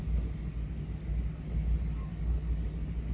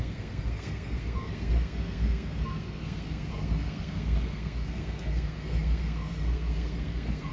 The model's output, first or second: second